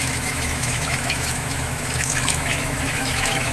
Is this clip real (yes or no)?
no